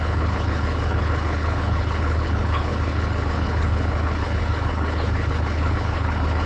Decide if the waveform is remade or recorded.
remade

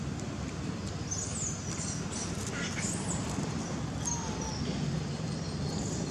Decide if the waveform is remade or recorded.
recorded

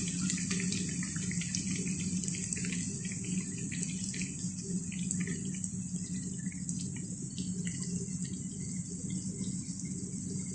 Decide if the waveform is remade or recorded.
recorded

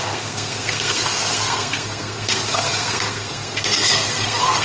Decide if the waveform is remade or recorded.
remade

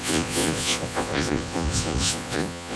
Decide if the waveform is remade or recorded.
remade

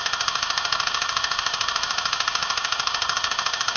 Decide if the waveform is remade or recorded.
remade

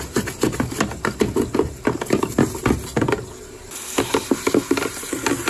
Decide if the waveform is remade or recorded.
recorded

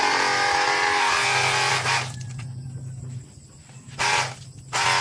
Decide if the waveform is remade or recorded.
recorded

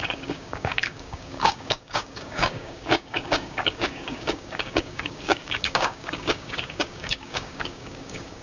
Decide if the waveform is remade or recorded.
remade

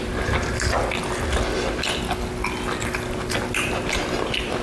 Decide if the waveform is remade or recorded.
recorded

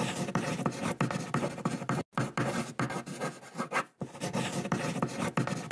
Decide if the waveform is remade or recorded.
recorded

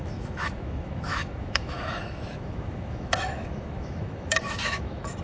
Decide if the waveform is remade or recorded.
remade